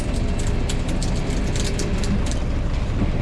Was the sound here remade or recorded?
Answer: remade